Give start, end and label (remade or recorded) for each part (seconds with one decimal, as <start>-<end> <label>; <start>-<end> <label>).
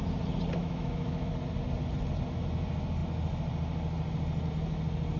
0.0-0.6 recorded; 0.6-1.3 remade; 1.3-5.2 recorded